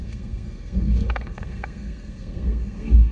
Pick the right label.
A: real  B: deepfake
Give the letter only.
B